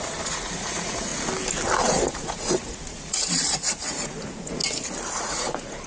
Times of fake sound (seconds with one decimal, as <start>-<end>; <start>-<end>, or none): 0.0-1.1; 1.8-4.6; 5.1-5.9